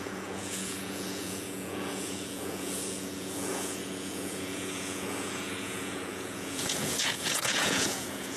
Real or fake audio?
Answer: fake